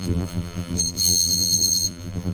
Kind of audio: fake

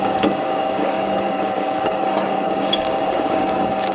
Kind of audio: fake